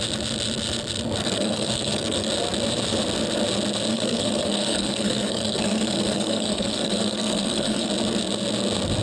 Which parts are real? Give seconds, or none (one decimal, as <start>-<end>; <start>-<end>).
0.0-1.2; 2.3-3.9; 7.9-9.0